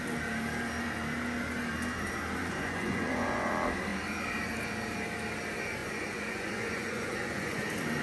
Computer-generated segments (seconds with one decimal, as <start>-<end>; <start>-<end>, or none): 2.4-3.5; 5.8-7.6